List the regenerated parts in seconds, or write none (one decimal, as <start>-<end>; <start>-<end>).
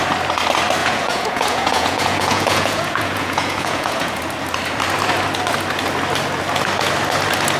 0.8-4.2